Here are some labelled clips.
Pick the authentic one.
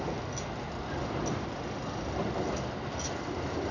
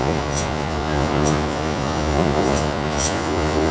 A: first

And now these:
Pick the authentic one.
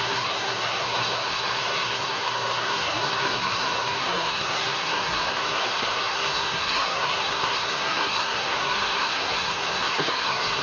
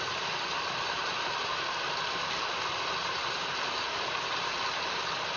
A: second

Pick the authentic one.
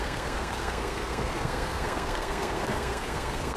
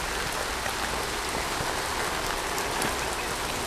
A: second